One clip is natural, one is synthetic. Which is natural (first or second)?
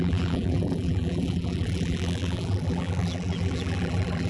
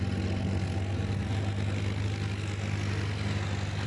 second